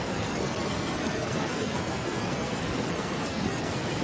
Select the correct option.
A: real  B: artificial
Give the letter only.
B